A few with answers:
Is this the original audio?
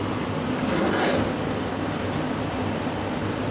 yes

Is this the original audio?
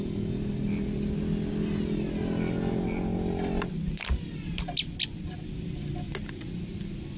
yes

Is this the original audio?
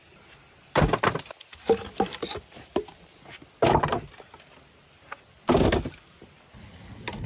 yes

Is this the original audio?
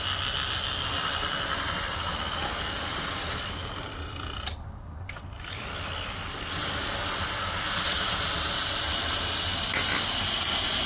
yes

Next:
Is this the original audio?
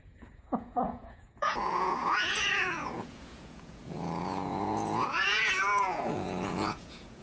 no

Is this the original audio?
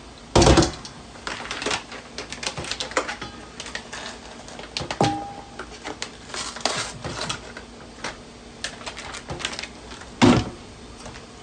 yes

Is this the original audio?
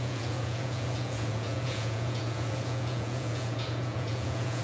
no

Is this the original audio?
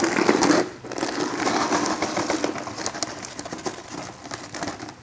yes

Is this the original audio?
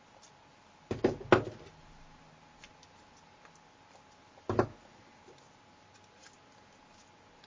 yes